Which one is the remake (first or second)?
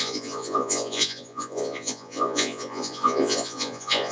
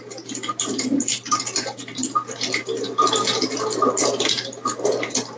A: first